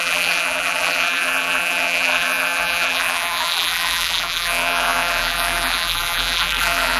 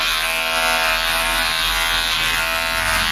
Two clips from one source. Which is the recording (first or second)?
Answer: second